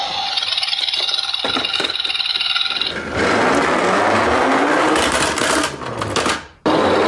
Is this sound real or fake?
real